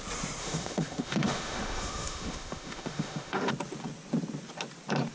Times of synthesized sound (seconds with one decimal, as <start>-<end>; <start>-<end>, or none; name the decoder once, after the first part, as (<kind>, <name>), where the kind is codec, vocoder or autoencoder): 0.4-3.5 (autoencoder, DAC-VAE)